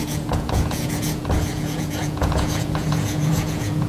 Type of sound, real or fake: fake